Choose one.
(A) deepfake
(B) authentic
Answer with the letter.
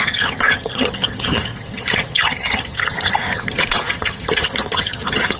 A